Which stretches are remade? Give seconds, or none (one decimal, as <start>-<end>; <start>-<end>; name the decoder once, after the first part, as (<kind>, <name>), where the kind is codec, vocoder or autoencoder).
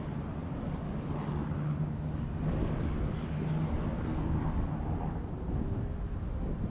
none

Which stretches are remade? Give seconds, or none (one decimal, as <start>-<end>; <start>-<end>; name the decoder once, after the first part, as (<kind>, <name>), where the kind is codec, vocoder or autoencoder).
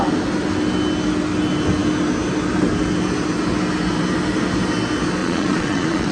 5.2-6.1 (vocoder, Vocos)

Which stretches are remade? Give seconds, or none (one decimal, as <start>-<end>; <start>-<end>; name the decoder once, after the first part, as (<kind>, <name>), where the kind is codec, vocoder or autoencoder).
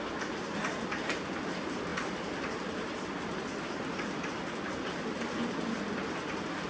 none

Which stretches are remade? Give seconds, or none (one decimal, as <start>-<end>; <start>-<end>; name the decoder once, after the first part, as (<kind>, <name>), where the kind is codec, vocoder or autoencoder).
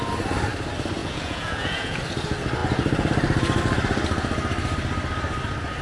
1.0-2.0 (vocoder, Vocos)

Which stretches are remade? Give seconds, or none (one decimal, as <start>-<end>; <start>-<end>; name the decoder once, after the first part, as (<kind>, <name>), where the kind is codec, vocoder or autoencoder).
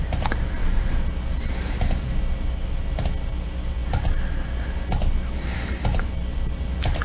none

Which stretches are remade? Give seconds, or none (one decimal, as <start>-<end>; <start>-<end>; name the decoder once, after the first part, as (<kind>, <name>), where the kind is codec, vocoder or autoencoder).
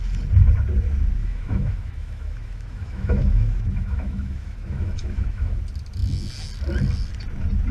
1.2-5.6 (autoencoder, DAC-VAE)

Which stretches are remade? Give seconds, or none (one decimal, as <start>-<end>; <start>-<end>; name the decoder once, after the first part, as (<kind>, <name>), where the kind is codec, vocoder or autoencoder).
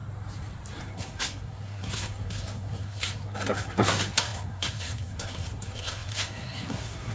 0.9-7.1 (codec, SNAC)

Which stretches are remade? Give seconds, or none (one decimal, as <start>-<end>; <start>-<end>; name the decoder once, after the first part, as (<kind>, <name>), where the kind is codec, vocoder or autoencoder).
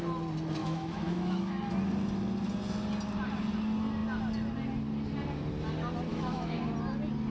0.6-1.7 (autoencoder, DAC-VAE); 6.1-6.6